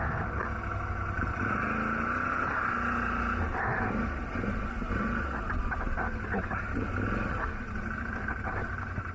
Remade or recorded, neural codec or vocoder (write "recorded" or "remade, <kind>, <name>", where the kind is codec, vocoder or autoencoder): recorded